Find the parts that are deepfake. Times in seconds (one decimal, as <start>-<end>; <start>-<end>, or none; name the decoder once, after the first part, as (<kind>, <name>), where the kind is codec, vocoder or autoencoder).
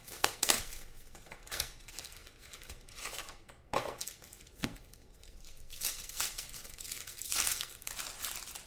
0.0-7.9 (codec, SNAC)